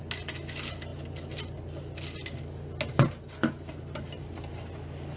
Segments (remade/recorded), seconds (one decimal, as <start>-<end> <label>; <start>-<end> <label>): 0.0-5.2 recorded